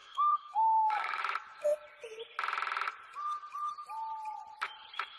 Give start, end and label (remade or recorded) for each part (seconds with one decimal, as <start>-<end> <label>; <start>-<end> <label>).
0.0-1.2 remade; 1.2-5.2 recorded